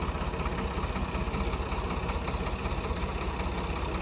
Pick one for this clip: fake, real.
real